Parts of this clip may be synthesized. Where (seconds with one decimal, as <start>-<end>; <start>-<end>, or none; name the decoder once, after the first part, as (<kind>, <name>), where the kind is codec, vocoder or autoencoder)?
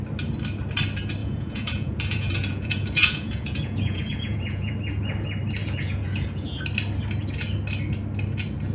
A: 1.2-4.7 (vocoder, Vocos); 5.6-6.6